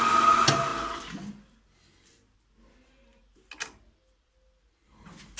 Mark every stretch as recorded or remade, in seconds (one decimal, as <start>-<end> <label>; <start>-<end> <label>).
0.0-5.4 recorded